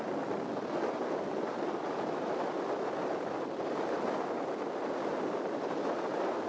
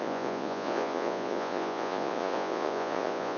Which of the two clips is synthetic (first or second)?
second